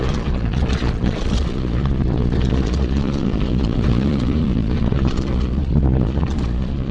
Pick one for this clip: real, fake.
fake